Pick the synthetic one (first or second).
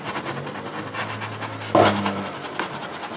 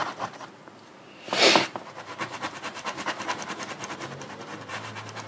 second